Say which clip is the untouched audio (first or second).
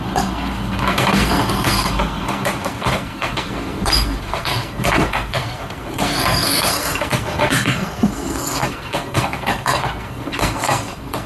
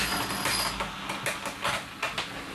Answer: second